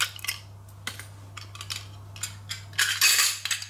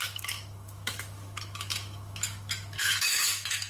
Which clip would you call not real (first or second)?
second